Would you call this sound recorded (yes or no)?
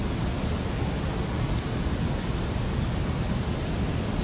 yes